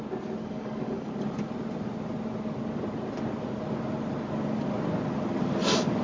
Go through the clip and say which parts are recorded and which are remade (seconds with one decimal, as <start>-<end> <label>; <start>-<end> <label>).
0.0-0.4 recorded; 0.4-1.1 remade; 1.1-6.0 recorded